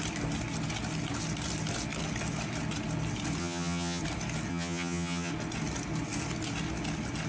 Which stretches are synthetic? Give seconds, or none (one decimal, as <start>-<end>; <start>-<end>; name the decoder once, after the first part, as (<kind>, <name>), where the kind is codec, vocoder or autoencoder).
3.4-4.0 (vocoder, HiFi-GAN); 4.5-5.3